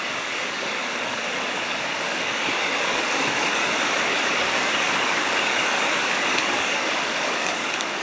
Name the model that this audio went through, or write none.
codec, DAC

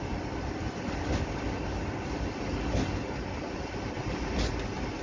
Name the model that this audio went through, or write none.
none